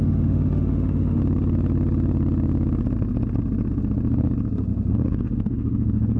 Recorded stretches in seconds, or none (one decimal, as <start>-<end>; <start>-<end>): 1.2-4.9